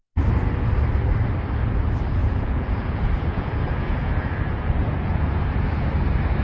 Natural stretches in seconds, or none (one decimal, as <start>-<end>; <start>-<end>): 0.0-2.2; 5.9-6.4

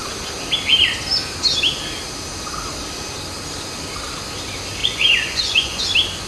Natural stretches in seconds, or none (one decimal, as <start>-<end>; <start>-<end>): 0.0-4.8; 5.8-6.3

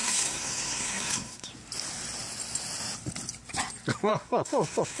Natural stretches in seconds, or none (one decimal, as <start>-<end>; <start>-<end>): 1.5-4.1

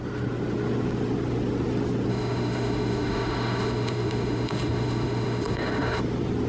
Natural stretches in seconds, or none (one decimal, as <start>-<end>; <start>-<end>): 0.0-2.1; 6.0-6.5

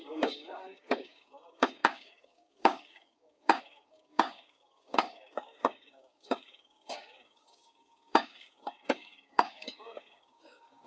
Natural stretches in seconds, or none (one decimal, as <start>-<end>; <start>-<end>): none